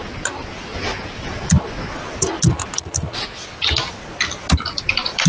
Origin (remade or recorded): recorded